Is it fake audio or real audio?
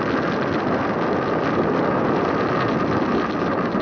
real